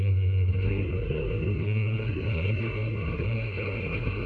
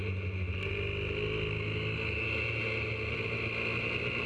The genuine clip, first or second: second